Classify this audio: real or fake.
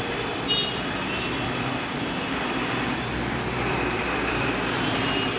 fake